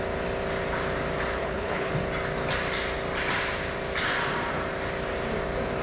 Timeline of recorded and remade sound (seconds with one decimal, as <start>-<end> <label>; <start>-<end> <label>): 0.0-1.4 recorded; 1.4-1.9 remade; 1.9-5.8 recorded